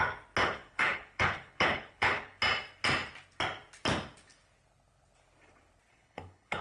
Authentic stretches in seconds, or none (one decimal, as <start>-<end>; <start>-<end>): 0.0-0.4; 2.4-5.9